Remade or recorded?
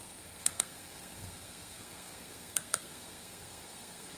remade